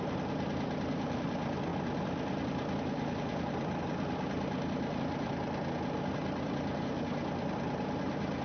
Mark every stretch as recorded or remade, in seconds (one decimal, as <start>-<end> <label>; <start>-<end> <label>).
0.0-8.4 recorded